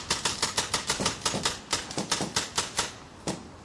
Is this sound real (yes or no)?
yes